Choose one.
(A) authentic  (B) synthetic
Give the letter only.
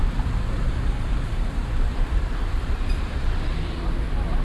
B